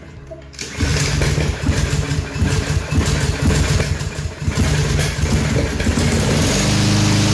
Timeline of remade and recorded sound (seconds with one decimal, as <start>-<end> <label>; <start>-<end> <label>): 0.0-7.3 recorded

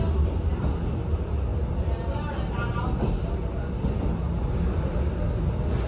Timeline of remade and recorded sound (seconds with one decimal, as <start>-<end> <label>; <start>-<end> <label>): 0.0-5.9 recorded

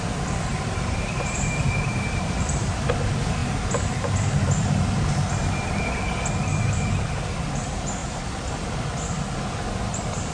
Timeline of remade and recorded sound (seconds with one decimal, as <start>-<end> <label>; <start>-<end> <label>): 0.0-0.5 recorded; 0.5-2.9 remade; 2.9-8.0 recorded; 8.0-8.5 remade; 8.5-10.3 recorded

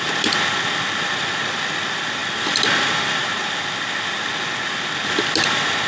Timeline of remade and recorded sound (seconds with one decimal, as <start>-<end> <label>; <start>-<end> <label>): 0.0-2.2 recorded; 2.2-3.2 remade; 3.2-5.9 recorded

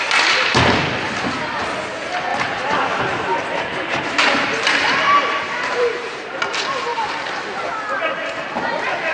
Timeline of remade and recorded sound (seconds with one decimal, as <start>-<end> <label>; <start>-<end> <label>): 0.0-2.3 recorded; 2.3-6.4 remade; 6.4-6.9 recorded; 6.9-7.6 remade; 7.6-9.1 recorded